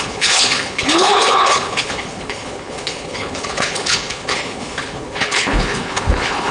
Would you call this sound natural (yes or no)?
no